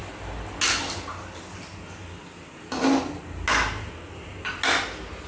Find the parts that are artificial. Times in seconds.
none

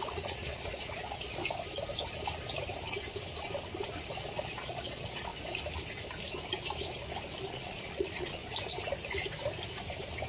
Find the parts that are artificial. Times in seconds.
0.0-1.4; 4.2-5.3; 7.5-8.4

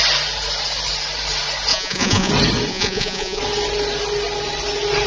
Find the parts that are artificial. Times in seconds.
1.7-2.3; 2.7-3.4

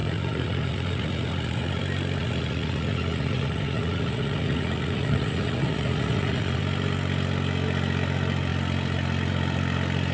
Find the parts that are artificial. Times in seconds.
0.0-1.8; 2.2-6.6

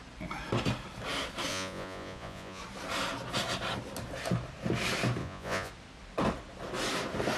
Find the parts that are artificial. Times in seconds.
1.5-2.6; 5.2-5.7

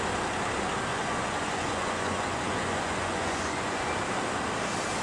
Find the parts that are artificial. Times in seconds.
0.9-3.9